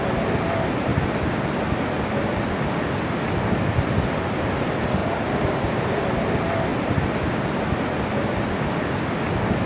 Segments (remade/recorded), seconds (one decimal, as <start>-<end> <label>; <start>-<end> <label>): 0.0-5.0 recorded; 5.0-5.9 remade; 5.9-9.7 recorded